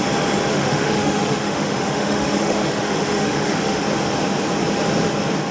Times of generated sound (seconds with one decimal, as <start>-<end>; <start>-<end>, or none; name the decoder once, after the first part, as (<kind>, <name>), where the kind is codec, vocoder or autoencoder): 0.5-3.8 (autoencoder, DAC-VAE)